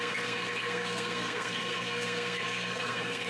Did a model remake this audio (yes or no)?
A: yes